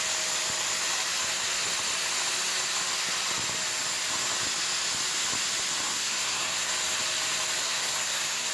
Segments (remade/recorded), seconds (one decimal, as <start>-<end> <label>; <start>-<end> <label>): 0.0-5.9 recorded; 5.9-6.7 remade; 6.7-7.6 recorded; 7.6-8.5 remade